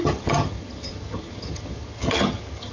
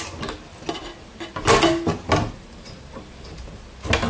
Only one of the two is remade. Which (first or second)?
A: first